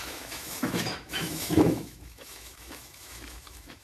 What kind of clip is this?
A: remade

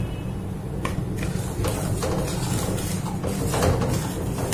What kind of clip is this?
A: recorded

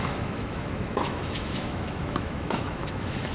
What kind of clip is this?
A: remade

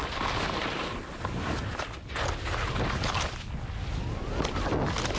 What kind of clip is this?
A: recorded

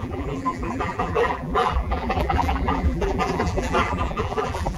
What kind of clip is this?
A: remade